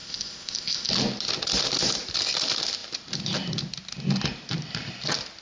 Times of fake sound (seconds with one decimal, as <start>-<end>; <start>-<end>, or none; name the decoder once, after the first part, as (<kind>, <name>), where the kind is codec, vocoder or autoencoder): 0.0-0.9 (codec, ZipCodec)